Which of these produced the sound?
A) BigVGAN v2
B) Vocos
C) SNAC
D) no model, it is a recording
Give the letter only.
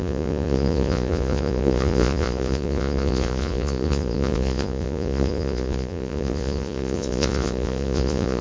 B